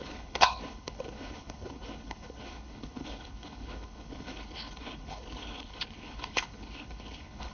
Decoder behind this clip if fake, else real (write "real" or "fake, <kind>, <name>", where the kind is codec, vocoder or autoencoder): fake, codec, HILCodec